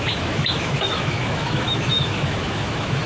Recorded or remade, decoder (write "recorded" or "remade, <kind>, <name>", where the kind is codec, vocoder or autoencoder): remade, autoencoder, DAC-VAE